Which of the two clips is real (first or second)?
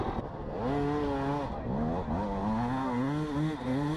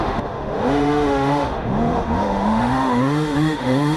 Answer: first